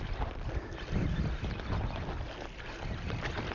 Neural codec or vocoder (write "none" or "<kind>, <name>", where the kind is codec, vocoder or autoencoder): none